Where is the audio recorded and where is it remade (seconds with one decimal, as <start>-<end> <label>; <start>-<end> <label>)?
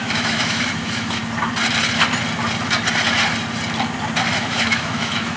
0.0-1.2 remade; 1.2-4.3 recorded; 4.3-5.4 remade